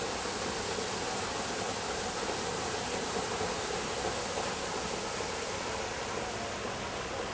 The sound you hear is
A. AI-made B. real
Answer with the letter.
B